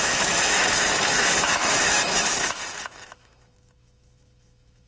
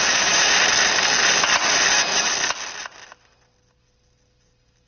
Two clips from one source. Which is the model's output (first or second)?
first